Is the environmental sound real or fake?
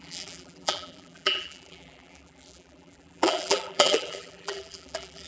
fake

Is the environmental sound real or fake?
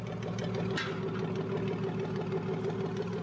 real